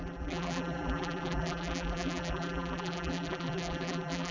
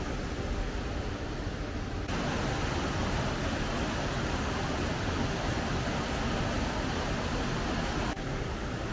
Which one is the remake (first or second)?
first